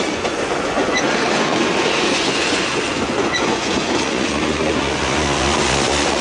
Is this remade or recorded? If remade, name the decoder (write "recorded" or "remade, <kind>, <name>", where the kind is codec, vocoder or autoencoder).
remade, vocoder, Vocos